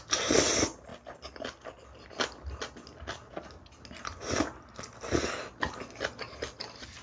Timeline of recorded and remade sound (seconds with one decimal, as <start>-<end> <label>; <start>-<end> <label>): 0.0-7.0 recorded